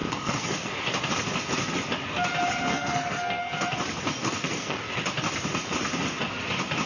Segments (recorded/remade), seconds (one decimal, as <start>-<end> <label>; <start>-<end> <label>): 0.0-0.7 remade; 0.7-2.7 recorded; 2.7-3.4 remade; 3.4-4.2 recorded; 4.2-4.9 remade; 4.9-6.9 recorded